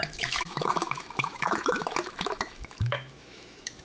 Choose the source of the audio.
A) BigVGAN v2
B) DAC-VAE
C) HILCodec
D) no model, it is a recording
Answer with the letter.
B